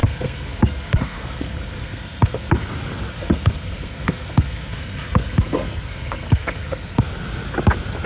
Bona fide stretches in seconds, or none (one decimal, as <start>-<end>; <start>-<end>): 2.5-3.1; 7.0-8.1